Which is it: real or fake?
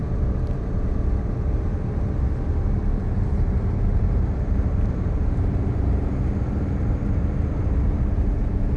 fake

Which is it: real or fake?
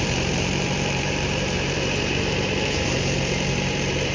fake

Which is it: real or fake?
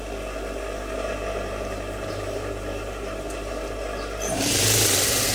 fake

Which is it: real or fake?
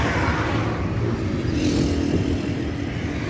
real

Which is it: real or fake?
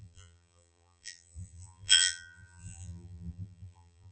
fake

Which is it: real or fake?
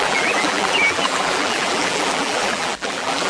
fake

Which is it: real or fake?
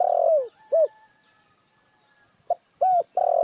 real